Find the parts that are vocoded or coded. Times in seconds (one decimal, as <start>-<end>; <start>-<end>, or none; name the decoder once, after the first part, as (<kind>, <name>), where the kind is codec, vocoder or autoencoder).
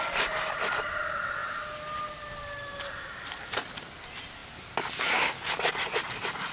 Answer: none